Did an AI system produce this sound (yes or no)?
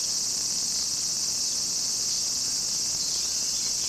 no